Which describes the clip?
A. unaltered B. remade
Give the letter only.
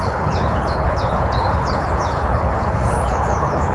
B